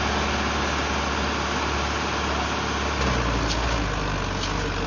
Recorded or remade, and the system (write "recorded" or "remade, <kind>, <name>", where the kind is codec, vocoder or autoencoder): recorded